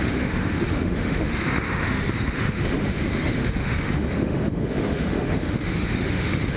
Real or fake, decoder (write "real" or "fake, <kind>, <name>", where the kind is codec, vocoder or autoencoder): fake, autoencoder, DAC-VAE